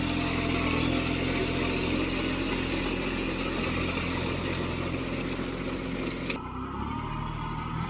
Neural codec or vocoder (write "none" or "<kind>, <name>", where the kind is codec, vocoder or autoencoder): none